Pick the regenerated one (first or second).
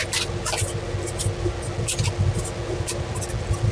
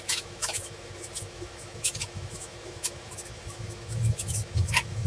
second